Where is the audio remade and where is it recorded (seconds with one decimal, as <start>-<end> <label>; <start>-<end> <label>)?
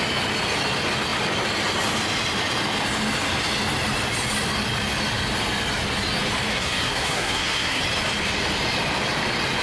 0.0-6.5 recorded; 6.5-7.8 remade; 7.8-9.6 recorded